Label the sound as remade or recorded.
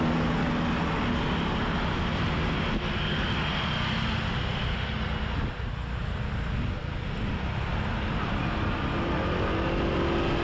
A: recorded